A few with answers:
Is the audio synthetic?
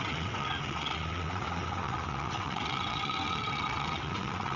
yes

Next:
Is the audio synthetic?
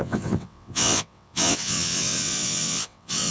yes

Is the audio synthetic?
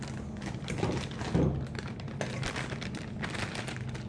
no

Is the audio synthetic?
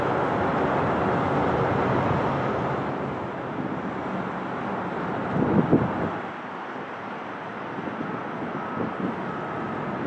no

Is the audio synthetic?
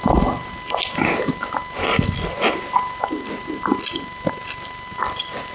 no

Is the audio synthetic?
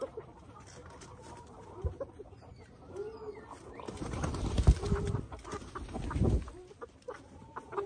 no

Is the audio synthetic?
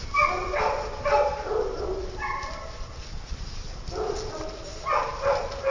no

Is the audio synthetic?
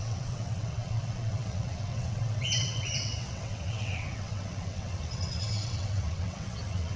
yes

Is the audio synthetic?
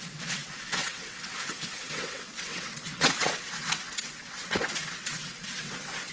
yes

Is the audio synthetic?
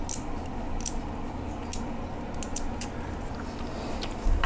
no